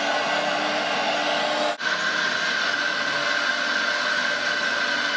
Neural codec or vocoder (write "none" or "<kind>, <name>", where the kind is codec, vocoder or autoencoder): none